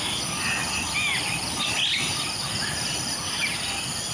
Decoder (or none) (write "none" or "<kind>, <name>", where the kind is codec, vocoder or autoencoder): none